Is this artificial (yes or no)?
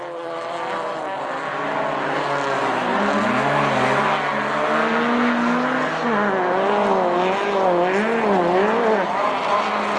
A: no